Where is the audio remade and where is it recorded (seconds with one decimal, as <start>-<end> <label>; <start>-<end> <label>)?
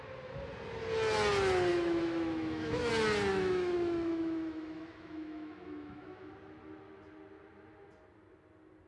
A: 0.0-1.7 recorded; 1.7-2.9 remade; 2.9-3.3 recorded; 3.3-6.3 remade; 6.3-8.9 recorded